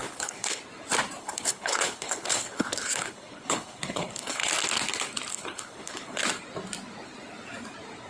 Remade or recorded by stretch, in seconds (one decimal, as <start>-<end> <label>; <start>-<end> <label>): 0.0-0.6 remade; 0.6-1.2 recorded; 1.2-4.5 remade; 4.5-5.3 recorded; 5.3-6.2 remade; 6.2-8.1 recorded

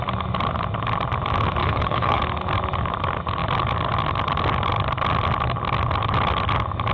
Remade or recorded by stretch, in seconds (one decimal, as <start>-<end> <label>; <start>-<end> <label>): 0.0-1.6 recorded; 1.6-2.2 remade; 2.2-6.9 recorded

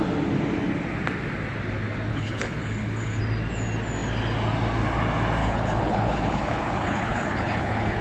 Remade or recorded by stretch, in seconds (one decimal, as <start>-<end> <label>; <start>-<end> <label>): 0.0-2.1 recorded; 2.1-3.2 remade; 3.2-5.4 recorded; 5.4-8.0 remade

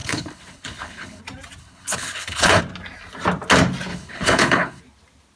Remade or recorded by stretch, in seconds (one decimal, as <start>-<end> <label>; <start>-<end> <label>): 0.0-1.2 remade; 1.2-1.6 recorded; 1.6-2.6 remade; 2.6-3.9 recorded; 3.9-4.8 remade; 4.8-5.4 recorded